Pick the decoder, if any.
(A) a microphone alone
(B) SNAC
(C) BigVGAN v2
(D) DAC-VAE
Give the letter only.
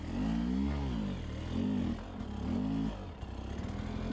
A